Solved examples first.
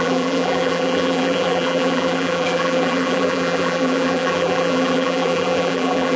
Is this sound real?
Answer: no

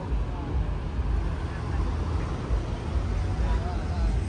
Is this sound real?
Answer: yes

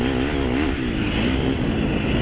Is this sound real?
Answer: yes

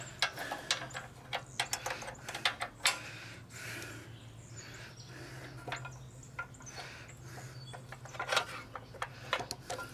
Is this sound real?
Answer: yes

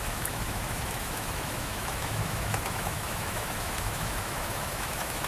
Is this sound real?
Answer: no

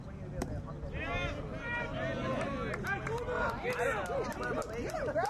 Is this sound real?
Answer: yes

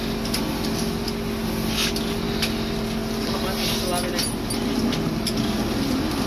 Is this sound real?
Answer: yes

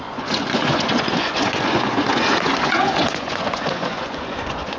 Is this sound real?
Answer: no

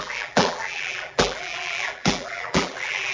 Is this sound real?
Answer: no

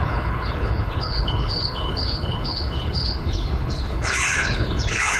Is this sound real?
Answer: no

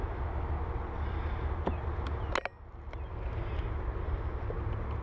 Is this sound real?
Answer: yes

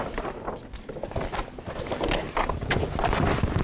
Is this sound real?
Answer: yes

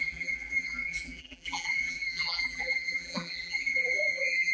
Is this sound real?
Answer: no